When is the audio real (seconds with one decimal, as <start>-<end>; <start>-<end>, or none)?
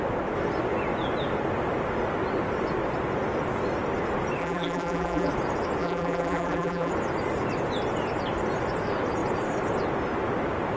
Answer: 0.0-4.4; 5.3-5.8; 6.9-10.8